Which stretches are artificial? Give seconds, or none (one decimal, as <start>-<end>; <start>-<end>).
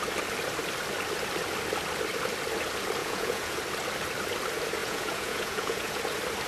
3.0-3.6; 4.8-6.0